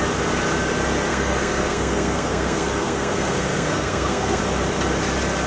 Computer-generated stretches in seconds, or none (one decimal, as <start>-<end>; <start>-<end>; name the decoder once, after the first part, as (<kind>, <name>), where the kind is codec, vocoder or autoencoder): 1.1-4.4 (codec, SNAC)